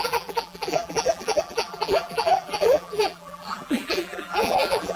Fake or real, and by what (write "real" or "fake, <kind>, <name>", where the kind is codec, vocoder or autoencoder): fake, vocoder, BigVGAN v2